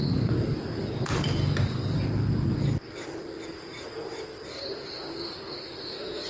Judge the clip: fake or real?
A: real